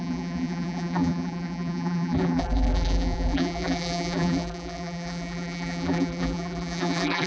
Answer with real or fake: fake